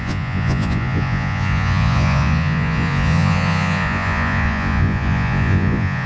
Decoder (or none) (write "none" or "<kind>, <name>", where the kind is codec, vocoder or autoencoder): vocoder, Vocos